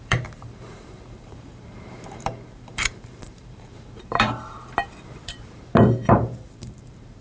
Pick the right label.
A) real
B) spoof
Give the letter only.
B